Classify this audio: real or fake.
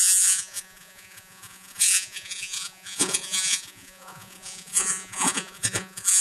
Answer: fake